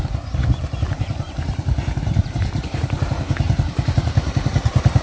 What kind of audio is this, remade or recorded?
remade